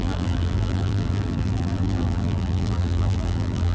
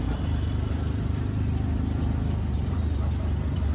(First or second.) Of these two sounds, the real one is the second